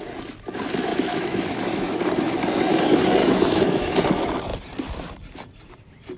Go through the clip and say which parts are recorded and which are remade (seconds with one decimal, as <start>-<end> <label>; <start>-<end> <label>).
0.0-0.9 recorded; 0.9-2.0 remade; 2.0-3.2 recorded; 3.2-4.0 remade; 4.0-6.2 recorded